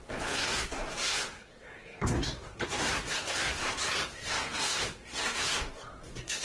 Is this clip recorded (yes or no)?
no